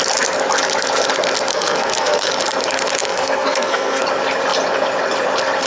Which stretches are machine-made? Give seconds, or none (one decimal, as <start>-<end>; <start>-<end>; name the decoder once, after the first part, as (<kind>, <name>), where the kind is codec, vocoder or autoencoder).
1.5-2.3 (codec, SNAC); 3.0-4.0